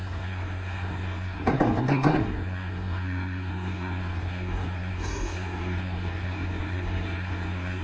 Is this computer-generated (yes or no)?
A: yes